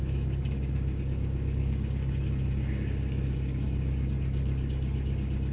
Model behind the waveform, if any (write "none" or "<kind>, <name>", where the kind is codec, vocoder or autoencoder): codec, DAC